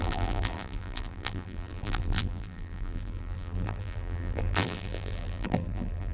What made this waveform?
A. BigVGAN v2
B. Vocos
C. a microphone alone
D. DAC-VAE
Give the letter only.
A